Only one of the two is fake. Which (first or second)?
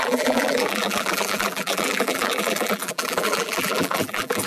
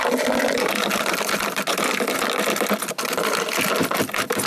first